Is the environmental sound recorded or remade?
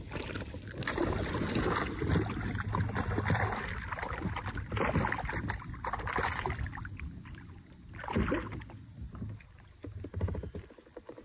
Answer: recorded